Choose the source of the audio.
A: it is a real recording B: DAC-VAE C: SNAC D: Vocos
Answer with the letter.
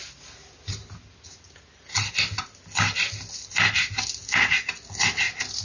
A